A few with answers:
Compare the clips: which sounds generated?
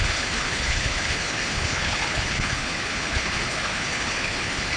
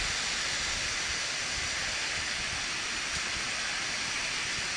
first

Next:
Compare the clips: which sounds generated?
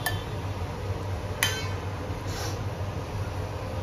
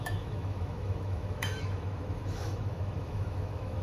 second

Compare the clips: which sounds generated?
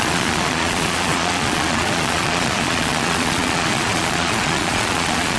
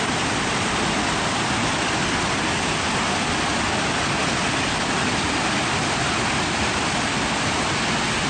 first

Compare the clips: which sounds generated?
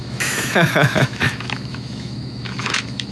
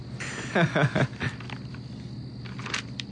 first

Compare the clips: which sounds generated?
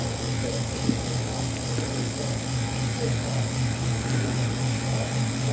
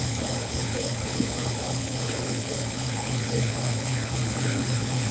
second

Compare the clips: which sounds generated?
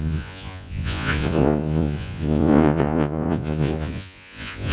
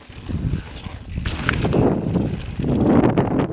first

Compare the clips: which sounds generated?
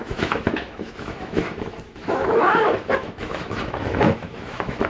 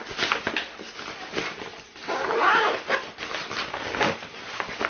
first